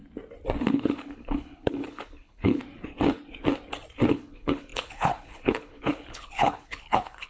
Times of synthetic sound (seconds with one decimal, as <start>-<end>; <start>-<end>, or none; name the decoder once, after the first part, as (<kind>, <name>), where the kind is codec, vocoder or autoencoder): 0.6-2.6 (codec, HILCodec); 4.1-7.3